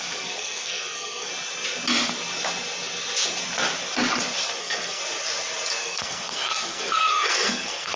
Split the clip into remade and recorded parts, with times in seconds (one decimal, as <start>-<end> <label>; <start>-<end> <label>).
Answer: 0.0-1.3 remade; 1.3-4.6 recorded; 4.6-5.0 remade; 5.0-5.8 recorded; 5.8-8.0 remade